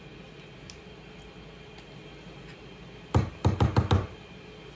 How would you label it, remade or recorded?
recorded